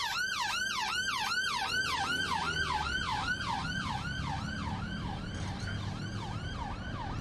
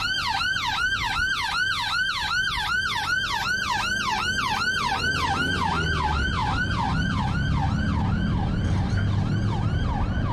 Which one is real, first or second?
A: second